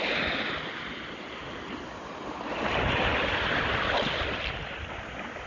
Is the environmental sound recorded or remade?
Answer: recorded